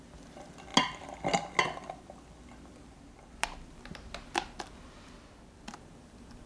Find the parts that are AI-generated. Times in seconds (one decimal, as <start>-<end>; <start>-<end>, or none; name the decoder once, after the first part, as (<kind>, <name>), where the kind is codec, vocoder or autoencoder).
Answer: none